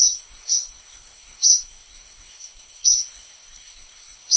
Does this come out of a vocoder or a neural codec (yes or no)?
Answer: yes